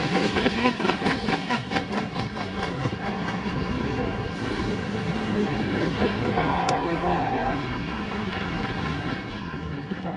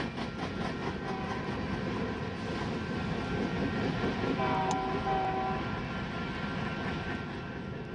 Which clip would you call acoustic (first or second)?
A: second